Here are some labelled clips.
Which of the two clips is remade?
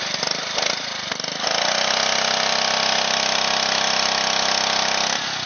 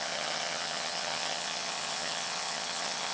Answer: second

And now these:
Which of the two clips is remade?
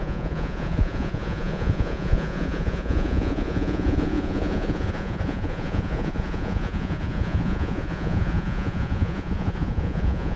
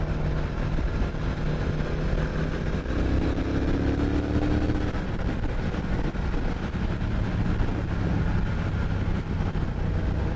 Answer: first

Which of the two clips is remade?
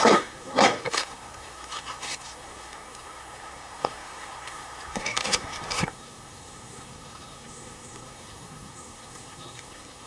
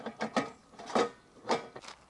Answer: first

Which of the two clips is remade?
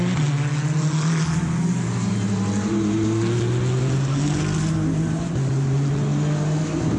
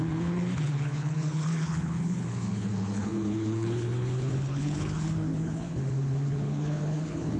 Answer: second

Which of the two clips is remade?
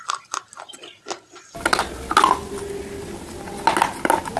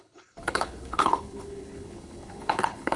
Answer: second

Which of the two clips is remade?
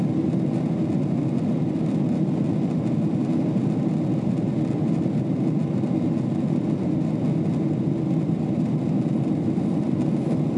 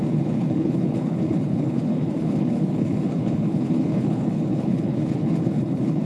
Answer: second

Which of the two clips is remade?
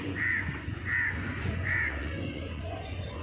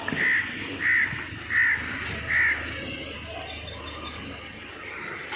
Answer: first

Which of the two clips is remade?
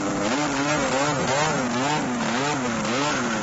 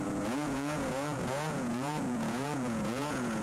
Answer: second